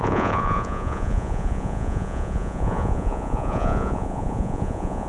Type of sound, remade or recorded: remade